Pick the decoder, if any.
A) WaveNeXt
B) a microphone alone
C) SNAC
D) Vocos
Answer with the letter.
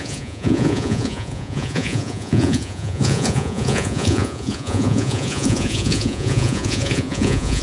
D